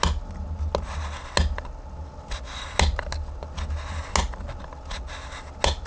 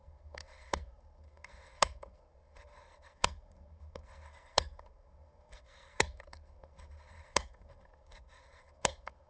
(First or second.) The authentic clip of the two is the first